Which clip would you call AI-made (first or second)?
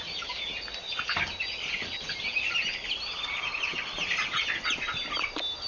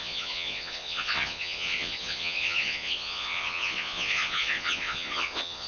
second